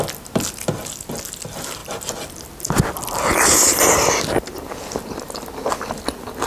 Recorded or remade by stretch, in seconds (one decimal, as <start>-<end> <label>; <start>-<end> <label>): 0.0-6.5 recorded